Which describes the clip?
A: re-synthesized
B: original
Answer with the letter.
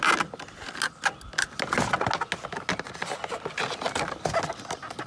B